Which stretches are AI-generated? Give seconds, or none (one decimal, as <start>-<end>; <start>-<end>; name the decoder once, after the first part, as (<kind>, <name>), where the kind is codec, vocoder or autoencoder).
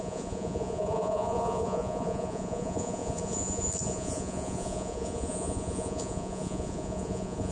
0.0-7.5 (vocoder, Vocos)